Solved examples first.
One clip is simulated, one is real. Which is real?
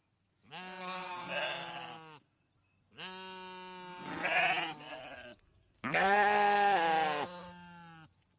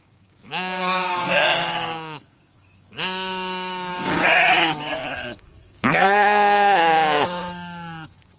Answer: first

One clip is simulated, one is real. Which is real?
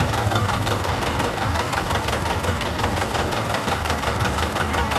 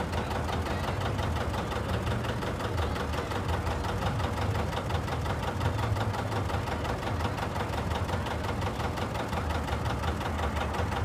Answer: second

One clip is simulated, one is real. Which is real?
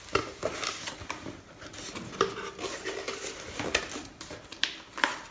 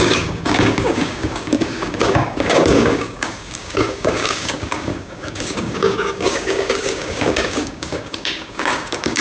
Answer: first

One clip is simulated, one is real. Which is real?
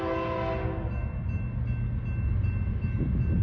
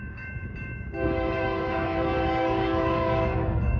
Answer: first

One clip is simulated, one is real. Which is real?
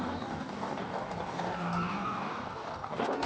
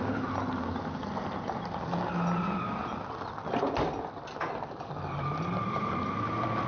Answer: second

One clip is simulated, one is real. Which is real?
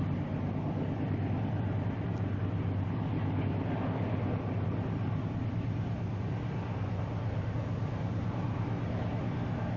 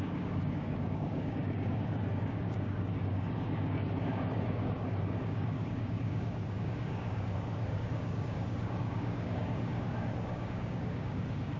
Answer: first